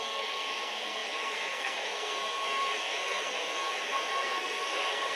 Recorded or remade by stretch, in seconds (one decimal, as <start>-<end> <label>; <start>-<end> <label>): 0.0-5.2 remade